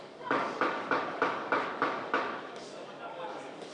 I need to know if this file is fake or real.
fake